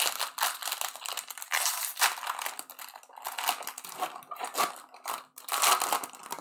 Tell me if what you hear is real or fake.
real